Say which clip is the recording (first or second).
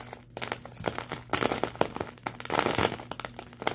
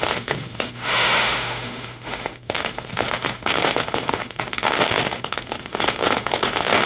first